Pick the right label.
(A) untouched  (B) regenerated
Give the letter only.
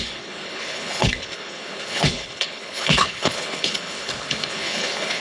B